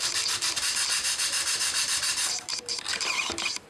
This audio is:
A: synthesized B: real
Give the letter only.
B